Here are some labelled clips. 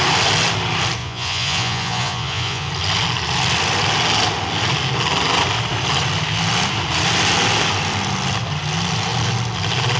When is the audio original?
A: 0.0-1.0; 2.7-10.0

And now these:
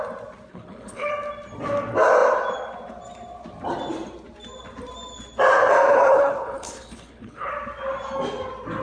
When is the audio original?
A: 0.0-0.5; 1.1-6.1; 7.5-8.8

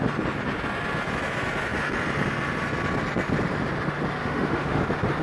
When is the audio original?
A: 0.0-4.2; 4.8-5.2

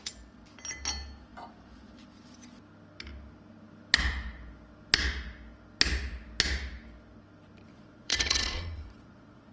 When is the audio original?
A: 0.0-7.7